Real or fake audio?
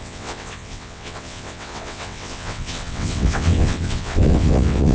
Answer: fake